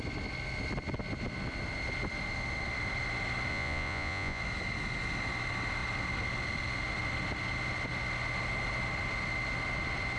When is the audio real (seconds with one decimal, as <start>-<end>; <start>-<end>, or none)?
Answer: 0.0-3.5; 4.4-10.2